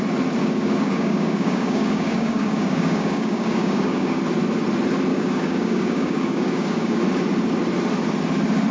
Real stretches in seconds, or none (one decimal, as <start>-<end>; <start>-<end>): 0.0-0.4; 4.2-5.1; 7.0-8.7